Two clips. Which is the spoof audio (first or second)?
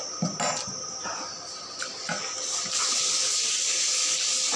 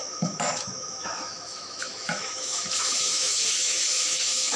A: second